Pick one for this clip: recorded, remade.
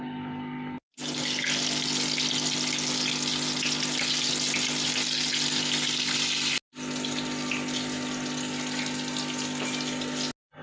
recorded